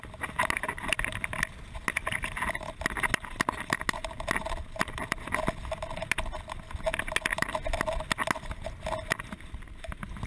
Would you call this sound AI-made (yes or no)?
no